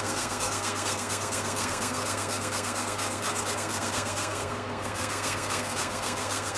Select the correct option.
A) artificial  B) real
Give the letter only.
A